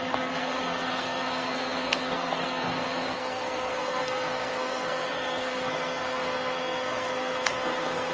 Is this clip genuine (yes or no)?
no